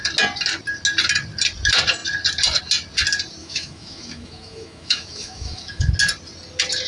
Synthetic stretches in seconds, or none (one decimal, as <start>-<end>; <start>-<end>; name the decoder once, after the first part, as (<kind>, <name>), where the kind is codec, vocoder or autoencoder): 3.4-5.9 (autoencoder, DAC-VAE)